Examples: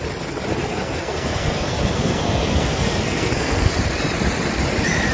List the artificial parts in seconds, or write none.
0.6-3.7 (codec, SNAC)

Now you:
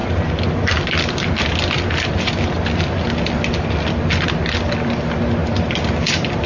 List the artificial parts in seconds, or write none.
none

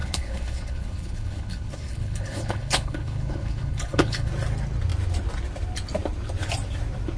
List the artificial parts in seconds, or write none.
0.0-4.3 (codec, HILCodec)

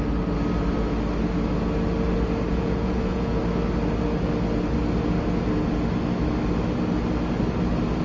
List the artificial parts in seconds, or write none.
2.5-3.4 (vocoder, Vocos)